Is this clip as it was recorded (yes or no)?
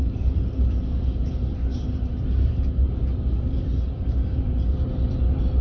yes